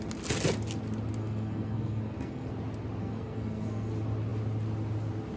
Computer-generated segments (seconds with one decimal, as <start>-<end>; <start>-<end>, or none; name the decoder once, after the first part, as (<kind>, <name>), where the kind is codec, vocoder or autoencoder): 1.2-2.5 (codec, SNAC); 3.0-3.9